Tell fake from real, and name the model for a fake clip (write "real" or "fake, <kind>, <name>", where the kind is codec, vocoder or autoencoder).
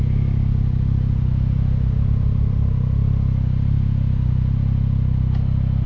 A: real